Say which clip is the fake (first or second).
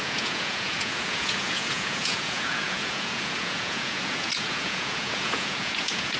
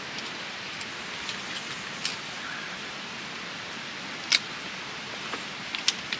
first